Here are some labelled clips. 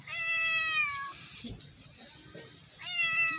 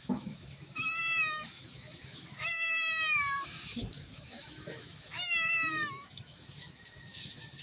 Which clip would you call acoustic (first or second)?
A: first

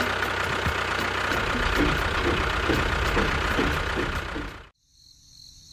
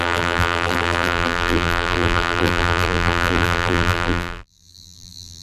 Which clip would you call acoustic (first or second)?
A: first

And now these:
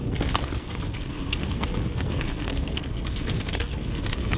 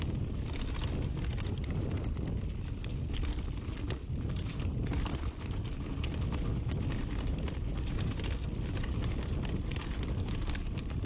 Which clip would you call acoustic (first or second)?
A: second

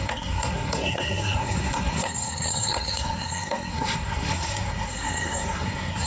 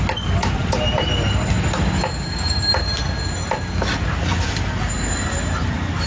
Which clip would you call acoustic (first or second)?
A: second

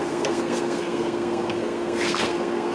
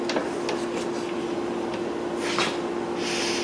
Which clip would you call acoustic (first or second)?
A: second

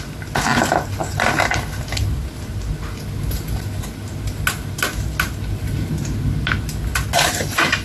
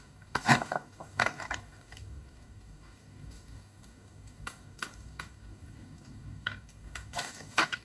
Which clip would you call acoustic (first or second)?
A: first